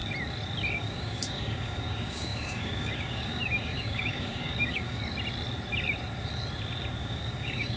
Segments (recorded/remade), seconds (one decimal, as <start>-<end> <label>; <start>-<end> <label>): 0.0-0.8 recorded; 0.8-5.0 remade; 5.0-7.0 recorded; 7.0-7.8 remade